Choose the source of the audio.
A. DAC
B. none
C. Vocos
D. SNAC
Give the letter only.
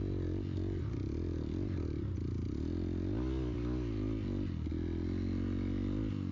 B